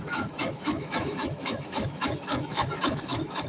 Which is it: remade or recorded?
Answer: remade